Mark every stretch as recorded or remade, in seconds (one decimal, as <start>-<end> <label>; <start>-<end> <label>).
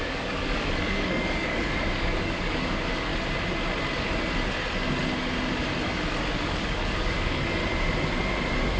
0.0-3.1 remade; 3.1-6.3 recorded; 6.3-7.6 remade; 7.6-8.8 recorded